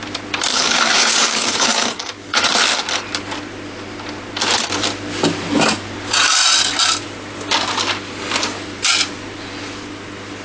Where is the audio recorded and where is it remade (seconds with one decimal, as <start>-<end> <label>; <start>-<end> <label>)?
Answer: 0.0-0.5 recorded; 0.5-2.5 remade; 2.5-10.4 recorded